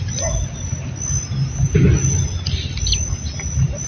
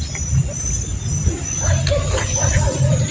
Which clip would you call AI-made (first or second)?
second